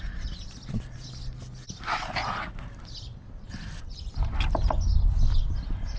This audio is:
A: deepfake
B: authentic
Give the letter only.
B